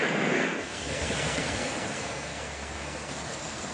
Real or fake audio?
fake